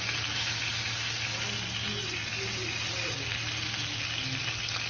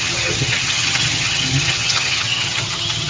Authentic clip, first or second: first